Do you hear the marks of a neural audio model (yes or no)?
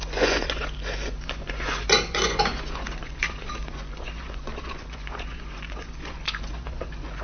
yes